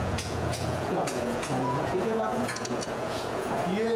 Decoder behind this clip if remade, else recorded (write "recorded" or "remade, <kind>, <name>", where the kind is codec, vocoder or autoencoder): remade, vocoder, Vocos